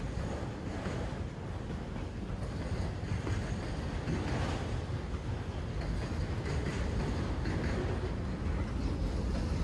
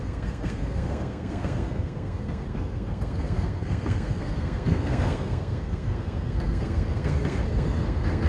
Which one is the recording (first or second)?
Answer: first